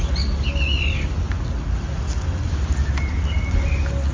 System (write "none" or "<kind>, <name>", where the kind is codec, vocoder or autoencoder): none